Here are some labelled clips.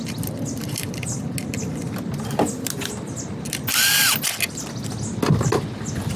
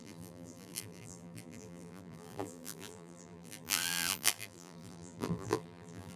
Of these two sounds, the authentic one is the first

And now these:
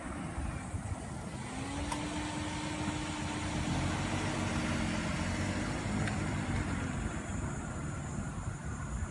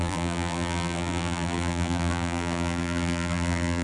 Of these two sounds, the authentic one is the first